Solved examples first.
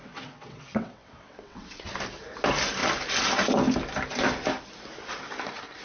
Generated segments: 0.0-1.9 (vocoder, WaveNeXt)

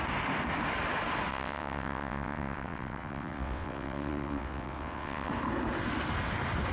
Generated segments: 1.3-5.3 (vocoder, WaveNeXt)

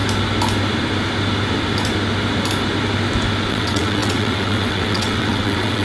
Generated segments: 3.5-5.8 (vocoder, WaveNeXt)